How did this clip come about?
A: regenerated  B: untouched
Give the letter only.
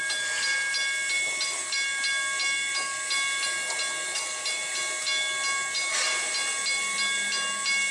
B